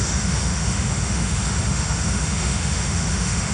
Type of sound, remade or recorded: remade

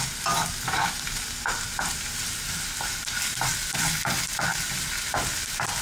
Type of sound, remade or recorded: recorded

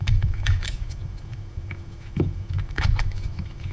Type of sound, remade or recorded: remade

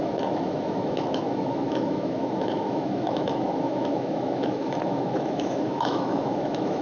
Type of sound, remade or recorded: remade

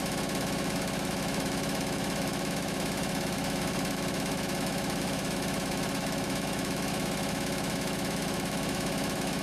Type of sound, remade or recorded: remade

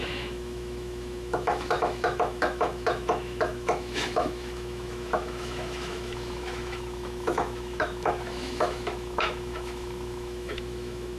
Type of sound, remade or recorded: remade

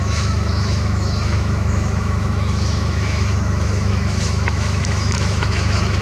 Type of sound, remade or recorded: remade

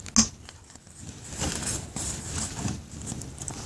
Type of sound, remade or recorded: recorded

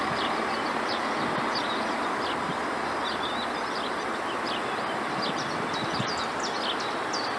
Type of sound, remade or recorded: recorded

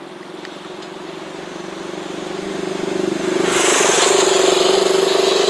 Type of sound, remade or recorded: recorded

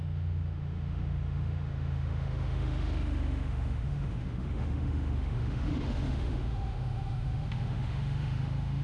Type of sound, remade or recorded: remade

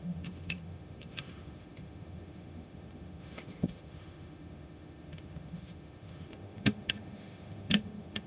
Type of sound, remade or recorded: remade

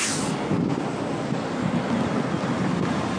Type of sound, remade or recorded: recorded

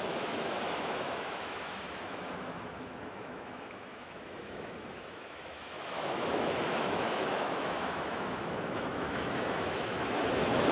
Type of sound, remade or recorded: remade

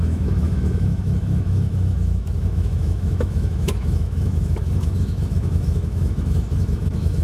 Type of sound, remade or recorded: remade